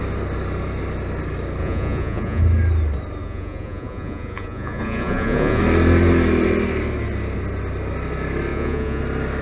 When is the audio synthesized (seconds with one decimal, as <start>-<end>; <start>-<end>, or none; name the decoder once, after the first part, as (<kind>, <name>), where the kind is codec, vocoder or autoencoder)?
1.6-2.4 (vocoder, Vocos); 3.2-5.6; 8.5-9.0